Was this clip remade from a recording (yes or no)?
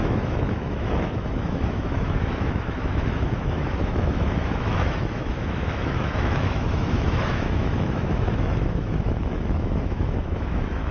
yes